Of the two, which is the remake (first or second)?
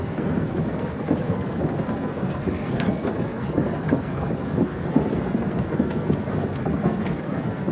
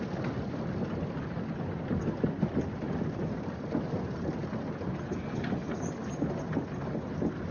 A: first